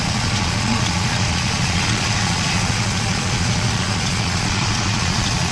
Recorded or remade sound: remade